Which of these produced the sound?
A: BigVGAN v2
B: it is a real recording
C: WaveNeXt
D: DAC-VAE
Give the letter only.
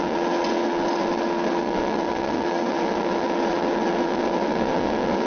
C